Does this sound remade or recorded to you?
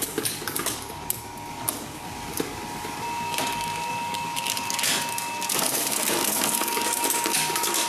remade